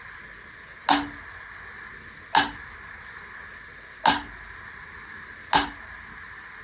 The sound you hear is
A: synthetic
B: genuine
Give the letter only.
B